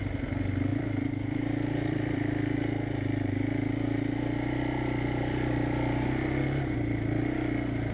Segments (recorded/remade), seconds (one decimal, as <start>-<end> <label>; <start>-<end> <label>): 0.0-0.7 recorded; 0.7-2.2 remade; 2.2-7.9 recorded